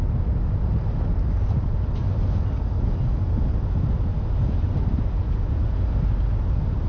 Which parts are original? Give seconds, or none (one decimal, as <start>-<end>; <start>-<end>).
0.0-6.9